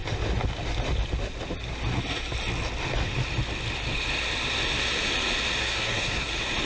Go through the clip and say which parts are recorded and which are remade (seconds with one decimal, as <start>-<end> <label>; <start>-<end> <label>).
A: 0.0-5.6 recorded; 5.6-6.3 remade; 6.3-6.7 recorded